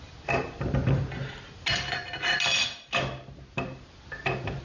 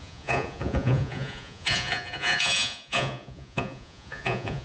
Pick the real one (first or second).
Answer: first